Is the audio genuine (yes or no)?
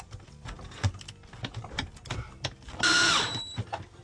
yes